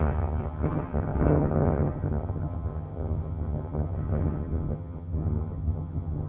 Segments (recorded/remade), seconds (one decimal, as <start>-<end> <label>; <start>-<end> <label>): 0.0-6.3 remade